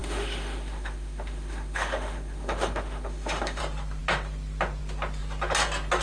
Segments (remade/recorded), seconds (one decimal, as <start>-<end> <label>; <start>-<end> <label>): 0.0-3.6 remade; 3.6-6.0 recorded